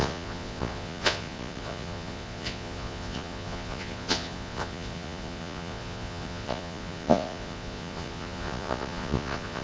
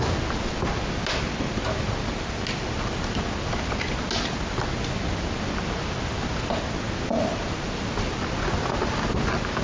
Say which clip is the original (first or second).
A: second